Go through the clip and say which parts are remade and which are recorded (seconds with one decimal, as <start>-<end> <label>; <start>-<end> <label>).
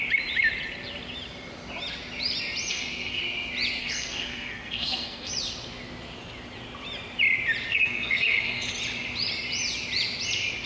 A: 0.0-2.7 recorded; 2.7-3.2 remade; 3.2-3.8 recorded; 3.8-5.3 remade; 5.3-7.7 recorded; 7.7-8.7 remade; 8.7-10.7 recorded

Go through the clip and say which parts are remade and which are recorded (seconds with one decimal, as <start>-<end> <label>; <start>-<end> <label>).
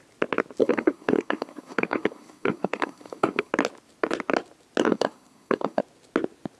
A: 0.0-0.6 recorded; 0.6-3.5 remade; 3.5-4.8 recorded; 4.8-5.8 remade; 5.8-6.6 recorded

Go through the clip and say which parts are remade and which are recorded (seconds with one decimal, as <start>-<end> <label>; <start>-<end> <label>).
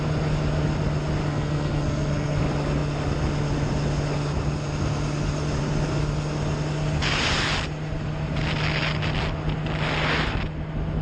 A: 0.0-1.2 recorded; 1.2-2.4 remade; 2.4-11.0 recorded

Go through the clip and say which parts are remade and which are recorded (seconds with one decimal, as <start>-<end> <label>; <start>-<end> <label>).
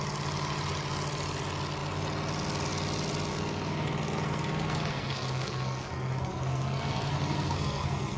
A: 0.0-3.3 recorded; 3.3-8.2 remade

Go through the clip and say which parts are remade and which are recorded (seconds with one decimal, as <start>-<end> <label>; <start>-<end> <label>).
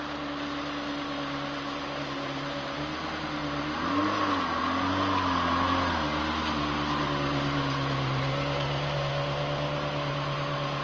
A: 0.0-10.8 recorded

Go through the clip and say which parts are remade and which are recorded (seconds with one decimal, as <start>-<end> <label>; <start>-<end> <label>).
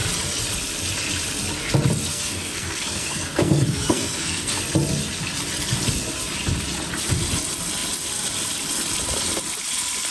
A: 0.0-2.1 recorded; 2.1-4.6 remade; 4.6-10.1 recorded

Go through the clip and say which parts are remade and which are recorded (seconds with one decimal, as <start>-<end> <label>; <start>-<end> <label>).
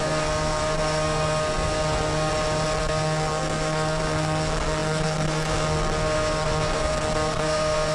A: 0.0-2.3 remade; 2.3-2.8 recorded; 2.8-7.9 remade